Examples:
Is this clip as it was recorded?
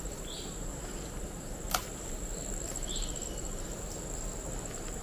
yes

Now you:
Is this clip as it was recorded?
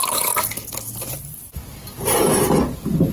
yes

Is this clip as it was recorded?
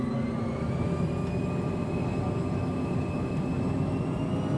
yes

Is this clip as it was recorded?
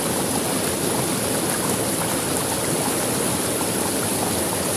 yes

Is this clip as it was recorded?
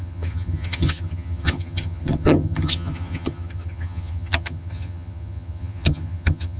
no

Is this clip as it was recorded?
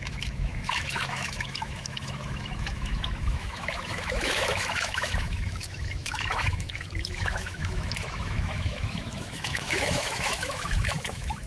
no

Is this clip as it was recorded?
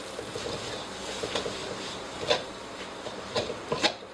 yes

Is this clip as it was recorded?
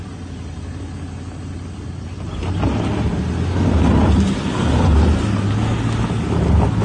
yes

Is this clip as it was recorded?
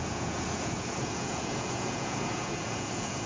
no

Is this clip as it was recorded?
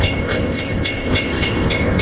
no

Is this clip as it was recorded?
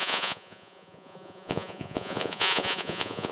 no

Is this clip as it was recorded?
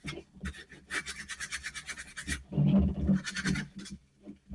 yes